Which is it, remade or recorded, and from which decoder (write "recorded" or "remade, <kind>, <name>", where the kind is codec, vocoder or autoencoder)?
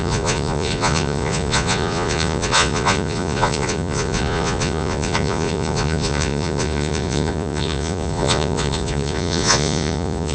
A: remade, vocoder, Vocos